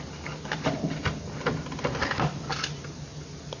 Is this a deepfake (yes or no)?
no